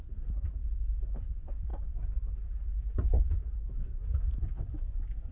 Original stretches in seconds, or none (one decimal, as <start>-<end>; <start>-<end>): 0.0-5.3